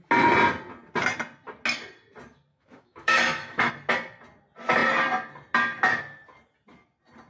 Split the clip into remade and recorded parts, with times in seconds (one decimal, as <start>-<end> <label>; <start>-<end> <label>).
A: 0.0-2.5 recorded; 2.5-3.7 remade; 3.7-7.3 recorded